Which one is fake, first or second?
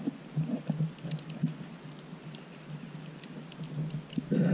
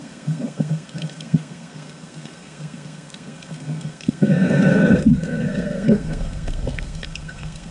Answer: second